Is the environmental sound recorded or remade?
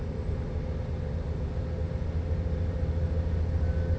recorded